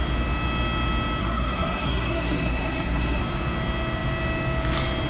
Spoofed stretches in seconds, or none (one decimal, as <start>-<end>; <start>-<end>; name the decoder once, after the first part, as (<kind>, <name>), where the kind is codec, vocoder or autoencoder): 1.2-3.2 (codec, SNAC)